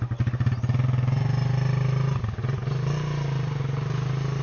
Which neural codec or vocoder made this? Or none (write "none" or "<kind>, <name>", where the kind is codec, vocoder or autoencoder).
none